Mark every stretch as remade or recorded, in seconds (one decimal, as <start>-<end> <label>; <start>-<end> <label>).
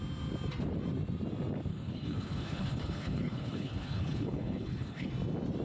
0.0-1.7 recorded; 1.7-5.1 remade; 5.1-5.6 recorded